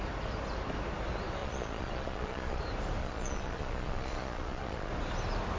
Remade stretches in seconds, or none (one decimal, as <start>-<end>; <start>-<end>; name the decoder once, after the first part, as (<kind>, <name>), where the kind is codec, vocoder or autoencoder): 1.4-2.6 (vocoder, Vocos); 3.0-4.9